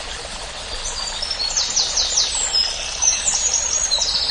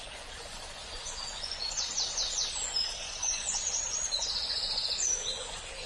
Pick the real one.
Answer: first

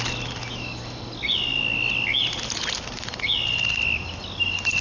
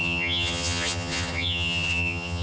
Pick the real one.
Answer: first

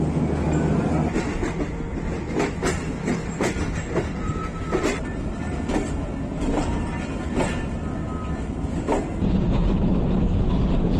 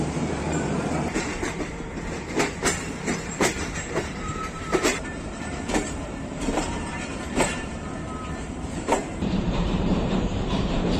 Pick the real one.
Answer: first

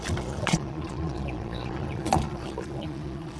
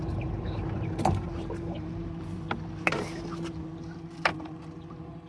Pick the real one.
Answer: second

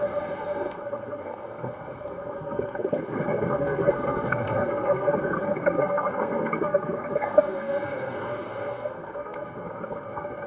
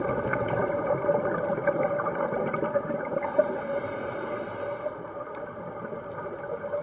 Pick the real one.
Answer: second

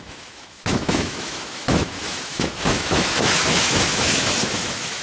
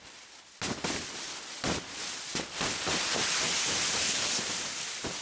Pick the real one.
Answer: second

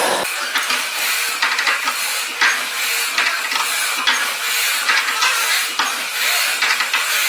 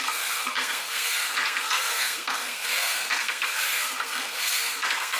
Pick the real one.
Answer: first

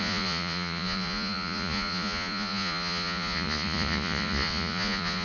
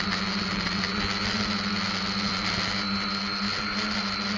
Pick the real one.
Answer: second